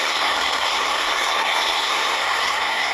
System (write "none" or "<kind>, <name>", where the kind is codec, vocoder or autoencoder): codec, SNAC